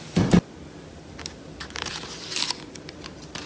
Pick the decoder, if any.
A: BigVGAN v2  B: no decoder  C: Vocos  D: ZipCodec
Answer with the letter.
B